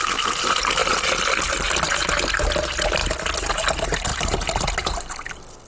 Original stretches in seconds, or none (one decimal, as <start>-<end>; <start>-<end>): 0.0-5.7